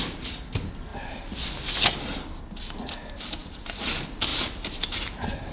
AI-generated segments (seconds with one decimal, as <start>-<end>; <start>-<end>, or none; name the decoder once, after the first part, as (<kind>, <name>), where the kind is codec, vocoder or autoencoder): 0.9-1.5 (vocoder, BigVGAN v2); 3.4-3.9